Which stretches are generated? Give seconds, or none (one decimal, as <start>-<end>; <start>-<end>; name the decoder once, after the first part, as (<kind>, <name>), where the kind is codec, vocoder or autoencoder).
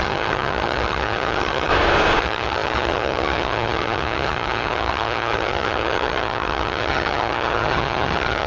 0.0-1.7 (vocoder, HiFi-GAN); 2.2-8.5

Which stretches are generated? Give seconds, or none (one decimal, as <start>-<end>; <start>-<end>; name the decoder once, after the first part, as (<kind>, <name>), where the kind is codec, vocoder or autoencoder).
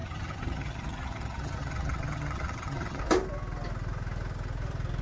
0.0-3.0 (vocoder, HiFi-GAN)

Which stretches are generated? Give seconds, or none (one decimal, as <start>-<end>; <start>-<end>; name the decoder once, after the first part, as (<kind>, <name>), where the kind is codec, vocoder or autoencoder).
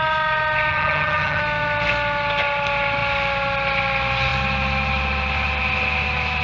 0.7-1.4 (vocoder, HiFi-GAN)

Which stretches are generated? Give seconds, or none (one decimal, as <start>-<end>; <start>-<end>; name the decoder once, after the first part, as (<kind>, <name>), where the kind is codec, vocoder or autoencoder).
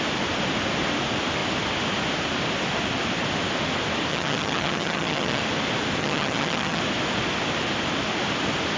4.1-5.4 (vocoder, HiFi-GAN); 6.0-6.8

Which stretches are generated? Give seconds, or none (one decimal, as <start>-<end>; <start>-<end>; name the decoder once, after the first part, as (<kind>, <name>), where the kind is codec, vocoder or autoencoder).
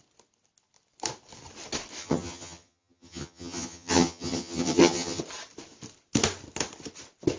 2.0-5.2 (vocoder, HiFi-GAN)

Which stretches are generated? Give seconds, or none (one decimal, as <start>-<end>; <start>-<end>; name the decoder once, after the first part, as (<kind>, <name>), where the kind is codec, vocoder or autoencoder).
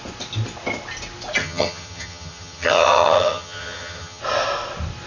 1.4-4.2 (vocoder, HiFi-GAN)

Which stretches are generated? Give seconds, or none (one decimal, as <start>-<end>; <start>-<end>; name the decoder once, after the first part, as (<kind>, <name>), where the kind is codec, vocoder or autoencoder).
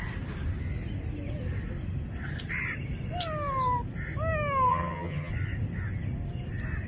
4.7-5.3 (vocoder, HiFi-GAN)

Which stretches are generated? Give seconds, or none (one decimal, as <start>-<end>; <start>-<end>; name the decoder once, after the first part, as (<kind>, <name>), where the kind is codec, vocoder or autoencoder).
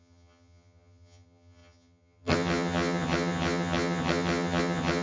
0.0-5.0 (vocoder, HiFi-GAN)